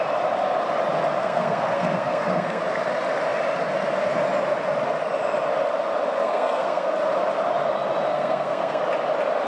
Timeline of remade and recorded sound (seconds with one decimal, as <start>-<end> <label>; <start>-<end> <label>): 0.0-1.2 recorded; 1.2-2.6 remade; 2.6-6.2 recorded; 6.2-6.9 remade; 6.9-8.1 recorded; 8.1-8.8 remade; 8.8-9.5 recorded